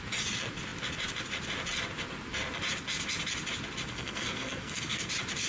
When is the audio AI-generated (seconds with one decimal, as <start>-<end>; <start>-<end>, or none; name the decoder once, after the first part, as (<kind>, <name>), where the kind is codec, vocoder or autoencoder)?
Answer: 3.9-5.1 (codec, SNAC)